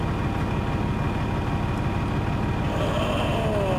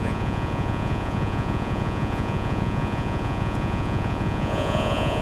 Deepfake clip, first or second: second